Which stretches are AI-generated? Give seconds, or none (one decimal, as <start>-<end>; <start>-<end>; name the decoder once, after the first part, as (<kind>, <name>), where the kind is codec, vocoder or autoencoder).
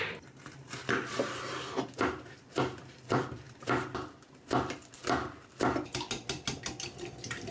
0.0-5.0 (vocoder, BigVGAN v2); 6.6-7.5